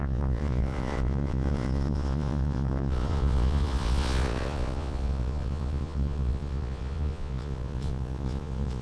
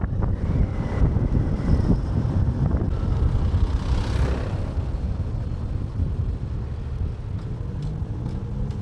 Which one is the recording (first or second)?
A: second